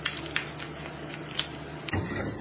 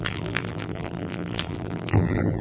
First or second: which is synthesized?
second